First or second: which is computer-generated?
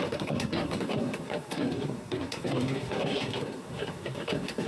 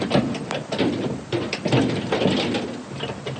first